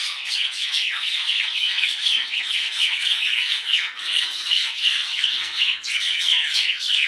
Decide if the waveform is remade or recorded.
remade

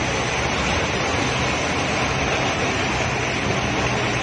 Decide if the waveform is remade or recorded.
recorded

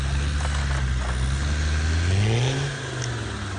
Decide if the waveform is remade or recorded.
recorded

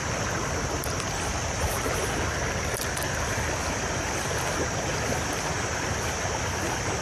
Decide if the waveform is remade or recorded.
recorded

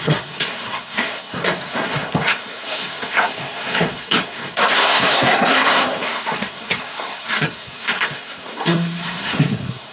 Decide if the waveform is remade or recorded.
remade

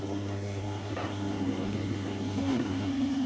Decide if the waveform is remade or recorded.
remade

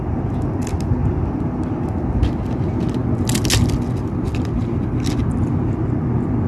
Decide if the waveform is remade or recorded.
recorded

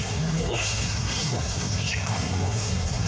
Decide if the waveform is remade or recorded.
remade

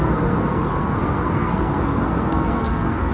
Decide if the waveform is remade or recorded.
remade